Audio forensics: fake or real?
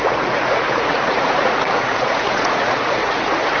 fake